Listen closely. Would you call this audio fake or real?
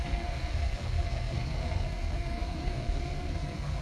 fake